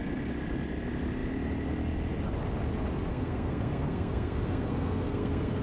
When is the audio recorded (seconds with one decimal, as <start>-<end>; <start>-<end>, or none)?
0.0-3.1